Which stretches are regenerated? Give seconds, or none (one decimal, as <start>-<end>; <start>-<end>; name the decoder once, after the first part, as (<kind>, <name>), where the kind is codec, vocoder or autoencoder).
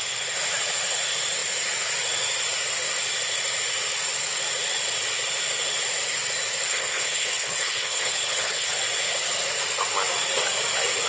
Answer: 6.7-8.7 (codec, HILCodec)